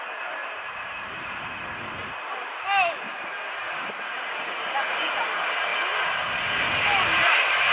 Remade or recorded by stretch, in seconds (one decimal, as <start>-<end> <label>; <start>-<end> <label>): 0.0-0.4 recorded; 0.4-3.9 remade; 3.9-7.7 recorded